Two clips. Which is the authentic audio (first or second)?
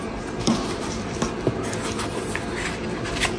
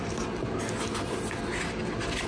second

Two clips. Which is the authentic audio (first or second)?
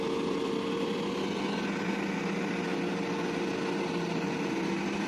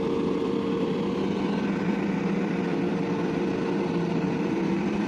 first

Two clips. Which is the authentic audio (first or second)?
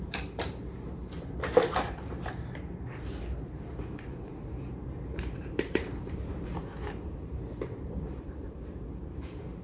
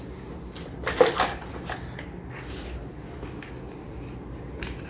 second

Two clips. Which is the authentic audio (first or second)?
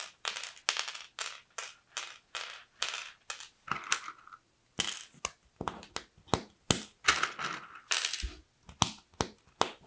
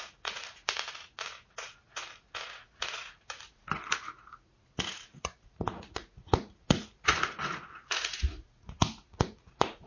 first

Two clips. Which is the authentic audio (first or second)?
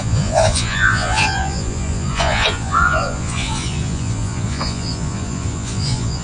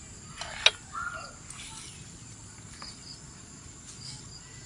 second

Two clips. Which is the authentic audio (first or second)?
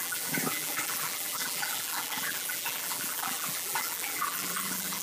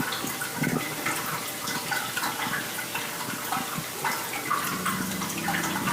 second